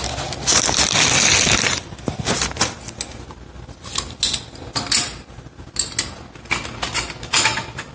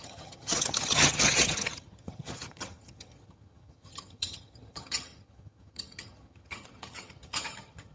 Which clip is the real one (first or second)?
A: first